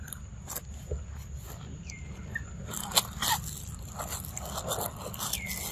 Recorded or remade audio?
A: recorded